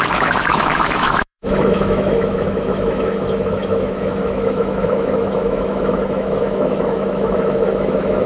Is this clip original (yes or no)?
no